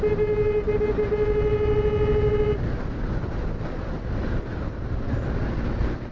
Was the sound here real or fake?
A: real